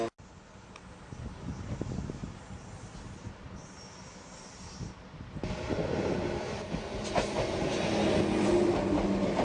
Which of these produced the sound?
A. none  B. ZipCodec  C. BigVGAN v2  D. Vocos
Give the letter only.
A